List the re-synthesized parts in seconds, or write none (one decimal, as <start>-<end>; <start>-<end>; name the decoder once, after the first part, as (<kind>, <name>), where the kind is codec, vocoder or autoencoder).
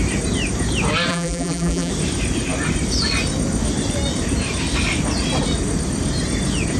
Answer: 1.1-1.9 (vocoder, BigVGAN v2)